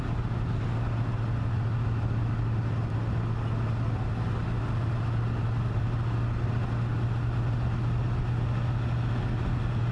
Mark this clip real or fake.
real